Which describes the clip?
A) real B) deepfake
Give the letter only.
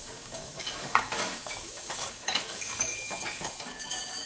B